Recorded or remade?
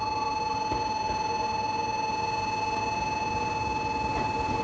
recorded